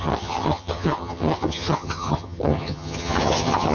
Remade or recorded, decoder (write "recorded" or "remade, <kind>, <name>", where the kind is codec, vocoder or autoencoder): remade, vocoder, HiFi-GAN